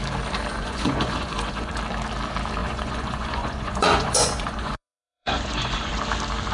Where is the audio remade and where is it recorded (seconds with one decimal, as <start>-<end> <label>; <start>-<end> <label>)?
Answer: 0.0-0.5 recorded; 0.5-1.7 remade; 1.7-2.6 recorded; 2.6-5.9 remade; 5.9-6.5 recorded